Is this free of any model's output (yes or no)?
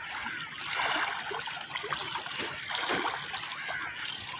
yes